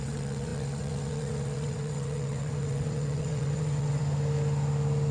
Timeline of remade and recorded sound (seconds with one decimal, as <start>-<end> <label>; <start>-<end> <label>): 0.0-4.0 remade; 4.0-5.1 recorded